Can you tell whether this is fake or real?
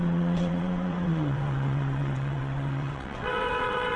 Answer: fake